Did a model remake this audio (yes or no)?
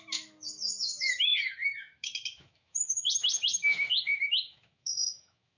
yes